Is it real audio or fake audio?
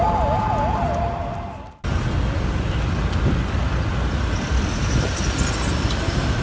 real